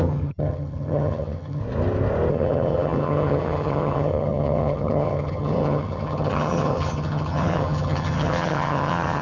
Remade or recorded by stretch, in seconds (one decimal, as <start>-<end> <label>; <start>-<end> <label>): 0.0-1.6 remade; 1.6-2.3 recorded; 2.3-9.2 remade